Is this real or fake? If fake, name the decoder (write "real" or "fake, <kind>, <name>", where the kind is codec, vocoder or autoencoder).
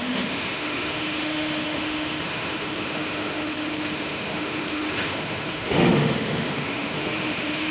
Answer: fake, autoencoder, DAC-VAE